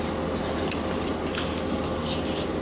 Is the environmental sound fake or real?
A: real